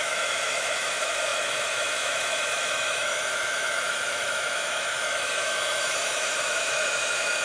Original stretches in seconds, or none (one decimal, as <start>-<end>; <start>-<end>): none